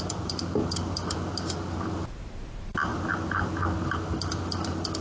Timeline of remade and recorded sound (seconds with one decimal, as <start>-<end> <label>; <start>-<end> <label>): 0.0-5.0 recorded